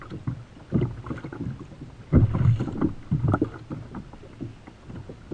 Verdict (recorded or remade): recorded